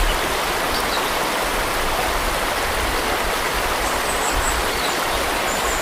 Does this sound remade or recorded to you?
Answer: recorded